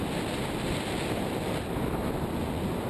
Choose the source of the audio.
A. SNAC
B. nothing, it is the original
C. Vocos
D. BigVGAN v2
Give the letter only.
B